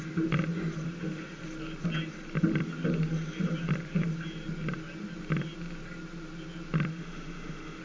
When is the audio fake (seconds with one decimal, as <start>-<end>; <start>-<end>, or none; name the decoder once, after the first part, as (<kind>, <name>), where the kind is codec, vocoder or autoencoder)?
6.9-7.8 (autoencoder, DAC-VAE)

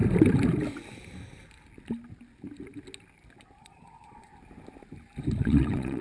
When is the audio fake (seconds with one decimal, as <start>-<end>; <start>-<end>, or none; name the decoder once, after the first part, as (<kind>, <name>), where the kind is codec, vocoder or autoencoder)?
3.6-4.3 (vocoder, Vocos); 5.4-6.0